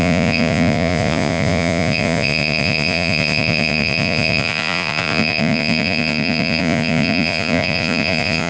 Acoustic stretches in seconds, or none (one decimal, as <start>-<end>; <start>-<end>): none